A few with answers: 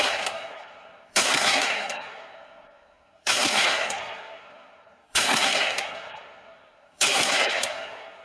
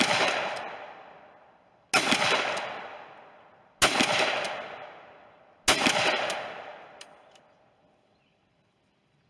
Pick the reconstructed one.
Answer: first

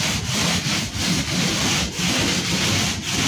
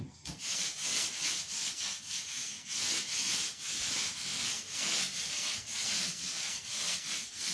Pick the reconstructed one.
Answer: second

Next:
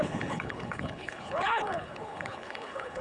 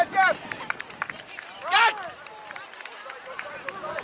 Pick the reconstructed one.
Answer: first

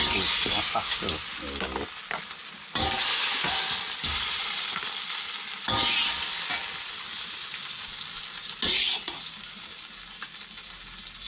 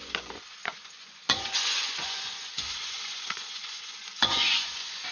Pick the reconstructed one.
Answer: second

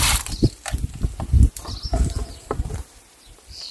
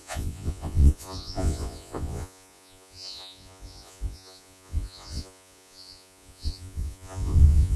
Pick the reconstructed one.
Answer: second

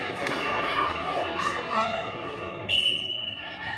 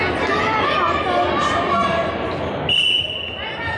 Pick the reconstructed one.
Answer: first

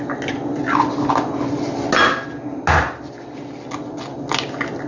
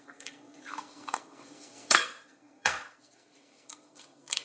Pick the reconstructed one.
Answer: second